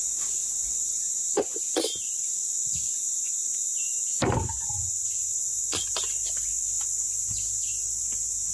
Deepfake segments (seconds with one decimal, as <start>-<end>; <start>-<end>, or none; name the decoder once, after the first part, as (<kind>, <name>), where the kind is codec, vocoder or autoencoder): 5.5-8.0 (vocoder, BigVGAN v2)